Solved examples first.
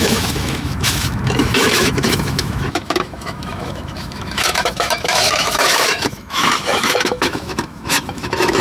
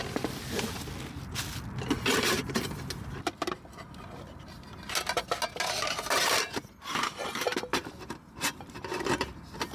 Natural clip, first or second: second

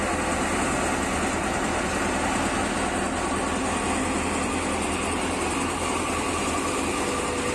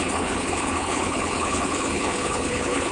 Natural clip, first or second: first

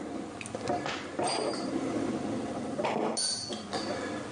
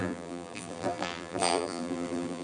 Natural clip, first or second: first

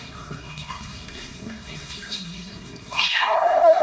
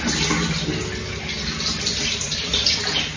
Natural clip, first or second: second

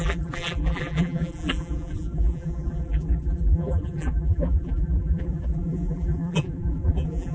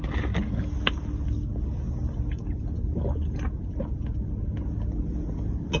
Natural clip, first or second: second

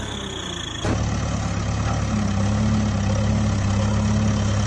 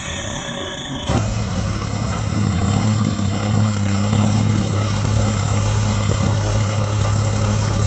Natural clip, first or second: first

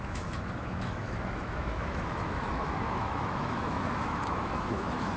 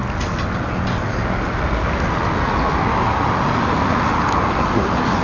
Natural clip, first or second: second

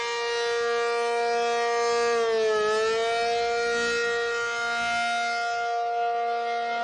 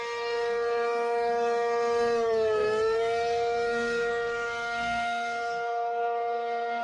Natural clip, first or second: first